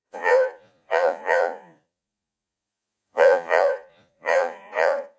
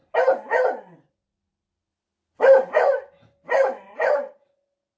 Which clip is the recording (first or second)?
second